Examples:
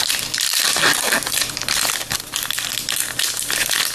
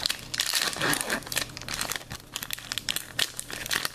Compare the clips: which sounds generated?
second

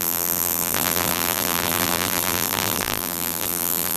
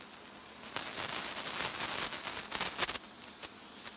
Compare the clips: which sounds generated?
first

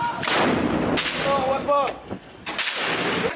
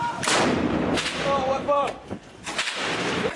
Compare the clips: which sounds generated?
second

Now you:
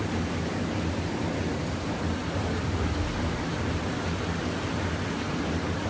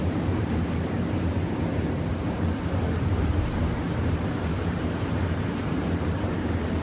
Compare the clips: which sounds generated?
second